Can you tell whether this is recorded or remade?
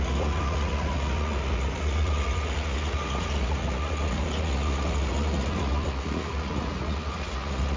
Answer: remade